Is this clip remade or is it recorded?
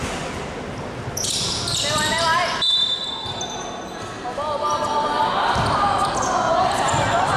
recorded